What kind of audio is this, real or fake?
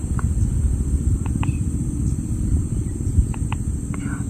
real